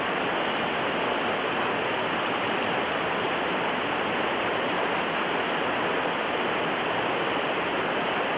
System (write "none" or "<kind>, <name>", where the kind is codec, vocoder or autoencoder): none